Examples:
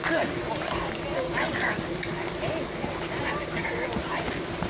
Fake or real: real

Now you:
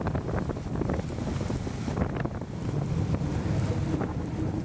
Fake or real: real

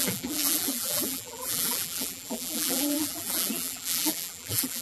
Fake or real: fake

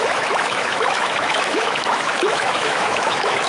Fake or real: fake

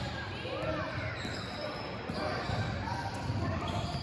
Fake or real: fake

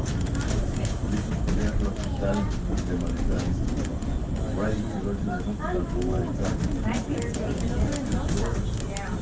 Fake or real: real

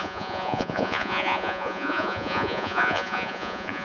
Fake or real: fake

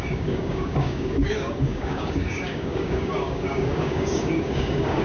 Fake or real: fake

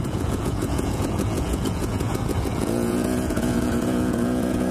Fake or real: fake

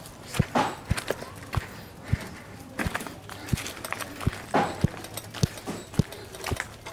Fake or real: real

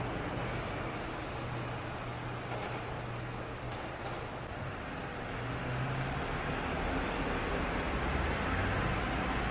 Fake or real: real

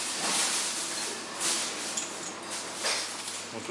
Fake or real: real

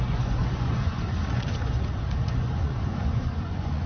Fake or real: fake